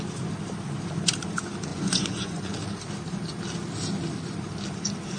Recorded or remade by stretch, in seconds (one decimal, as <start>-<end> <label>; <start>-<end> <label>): 0.0-1.7 recorded; 1.7-2.5 remade; 2.5-5.2 recorded